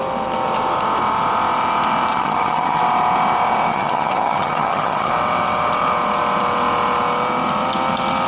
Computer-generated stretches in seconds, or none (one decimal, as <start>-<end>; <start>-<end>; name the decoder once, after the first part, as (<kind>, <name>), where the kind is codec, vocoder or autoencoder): 2.1-2.8 (vocoder, HiFi-GAN); 3.7-5.1

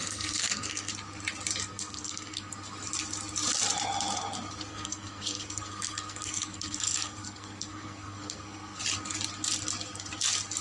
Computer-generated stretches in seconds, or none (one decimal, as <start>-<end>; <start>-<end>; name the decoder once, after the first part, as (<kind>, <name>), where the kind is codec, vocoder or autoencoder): 0.0-0.9 (codec, SNAC); 1.7-2.5; 4.7-8.8

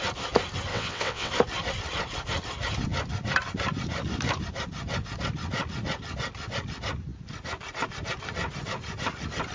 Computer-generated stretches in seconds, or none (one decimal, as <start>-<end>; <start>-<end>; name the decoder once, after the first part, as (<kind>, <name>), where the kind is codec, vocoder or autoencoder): 0.7-1.3 (vocoder, WaveNeXt)

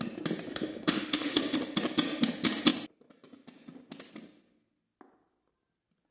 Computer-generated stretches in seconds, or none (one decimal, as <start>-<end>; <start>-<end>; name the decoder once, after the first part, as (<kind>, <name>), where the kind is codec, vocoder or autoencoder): 0.5-1.4 (autoencoder, DAC-VAE)

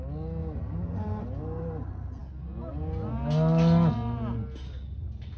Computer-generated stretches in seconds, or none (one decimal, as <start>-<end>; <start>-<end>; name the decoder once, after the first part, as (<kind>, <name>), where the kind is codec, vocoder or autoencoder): none

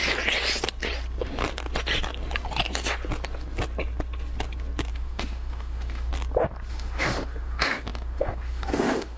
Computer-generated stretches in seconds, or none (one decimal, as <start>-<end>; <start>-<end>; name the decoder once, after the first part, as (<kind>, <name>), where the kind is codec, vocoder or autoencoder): 4.9-6.1 (autoencoder, DAC-VAE); 6.7-9.2

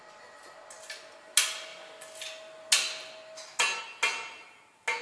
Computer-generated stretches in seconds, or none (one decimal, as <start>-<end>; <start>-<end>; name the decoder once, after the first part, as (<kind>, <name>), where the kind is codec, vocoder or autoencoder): none